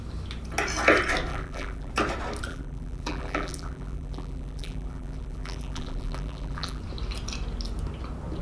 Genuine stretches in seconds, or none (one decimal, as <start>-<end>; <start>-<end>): 0.0-1.3; 1.9-2.5; 6.8-8.4